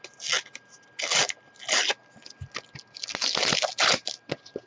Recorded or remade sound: recorded